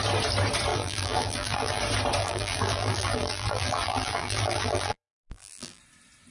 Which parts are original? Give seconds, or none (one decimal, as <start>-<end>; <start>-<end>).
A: 0.0-0.7; 1.8-2.2; 5.8-6.3